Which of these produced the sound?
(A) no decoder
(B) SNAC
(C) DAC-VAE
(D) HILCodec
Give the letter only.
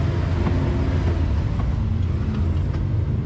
A